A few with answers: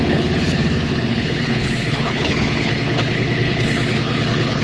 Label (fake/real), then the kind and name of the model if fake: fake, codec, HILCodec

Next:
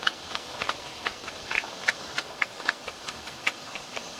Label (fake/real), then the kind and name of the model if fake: fake, codec, SNAC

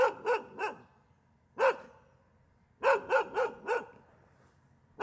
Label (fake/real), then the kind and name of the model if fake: real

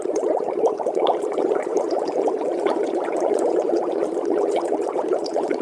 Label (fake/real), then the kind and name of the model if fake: fake, vocoder, Vocos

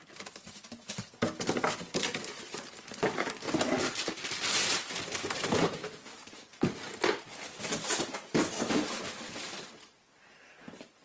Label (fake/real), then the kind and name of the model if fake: real